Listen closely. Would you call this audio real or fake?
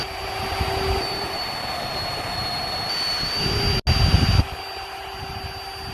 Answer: real